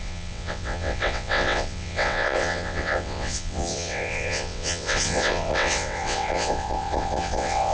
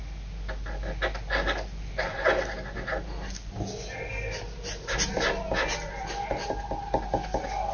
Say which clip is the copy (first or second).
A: first